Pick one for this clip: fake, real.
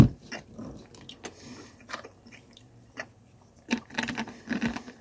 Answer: fake